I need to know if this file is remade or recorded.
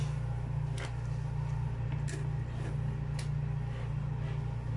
recorded